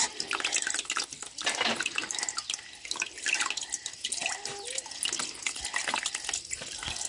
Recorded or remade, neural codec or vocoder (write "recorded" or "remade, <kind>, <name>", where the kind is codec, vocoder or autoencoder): recorded